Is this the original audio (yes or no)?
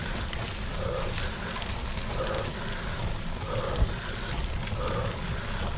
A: yes